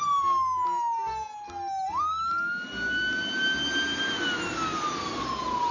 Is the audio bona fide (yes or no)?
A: yes